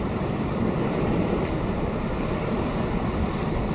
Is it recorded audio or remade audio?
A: recorded